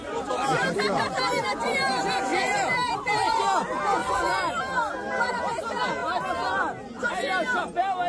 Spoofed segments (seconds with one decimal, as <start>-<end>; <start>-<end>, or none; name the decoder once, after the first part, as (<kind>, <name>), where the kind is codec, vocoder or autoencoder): 2.3-3.1 (vocoder, BigVGAN v2); 4.0-5.3